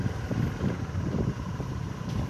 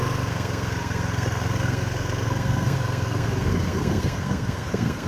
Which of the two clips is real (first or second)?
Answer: first